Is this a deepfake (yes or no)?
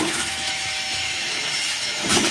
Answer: yes